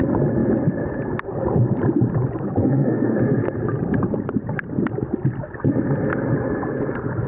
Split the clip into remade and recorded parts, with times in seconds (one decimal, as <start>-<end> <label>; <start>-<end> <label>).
0.0-2.6 recorded; 2.6-3.2 remade; 3.2-7.3 recorded